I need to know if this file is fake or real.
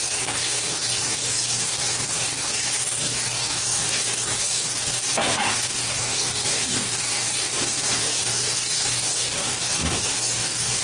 fake